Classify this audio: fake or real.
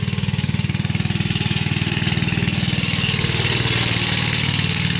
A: real